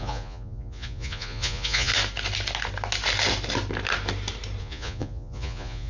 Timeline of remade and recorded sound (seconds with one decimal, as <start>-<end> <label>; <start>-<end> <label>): 0.0-1.9 remade; 1.9-4.6 recorded; 4.6-5.9 remade